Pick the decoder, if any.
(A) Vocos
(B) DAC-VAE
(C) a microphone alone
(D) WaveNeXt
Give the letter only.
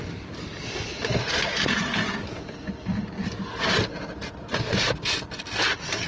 C